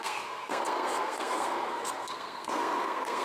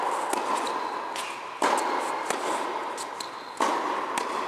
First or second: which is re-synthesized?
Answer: first